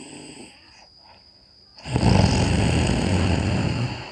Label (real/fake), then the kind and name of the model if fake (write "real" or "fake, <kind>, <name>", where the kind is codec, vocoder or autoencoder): real